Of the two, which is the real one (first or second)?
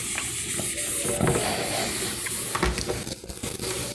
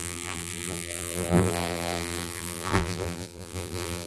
first